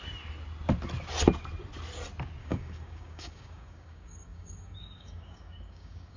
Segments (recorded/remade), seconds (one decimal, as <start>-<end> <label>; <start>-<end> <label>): 0.0-2.4 recorded; 2.4-6.2 remade